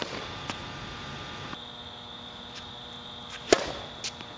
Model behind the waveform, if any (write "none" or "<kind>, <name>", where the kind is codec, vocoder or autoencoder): none